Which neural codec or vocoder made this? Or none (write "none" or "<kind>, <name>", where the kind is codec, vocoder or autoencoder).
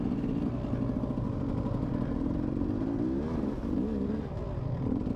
none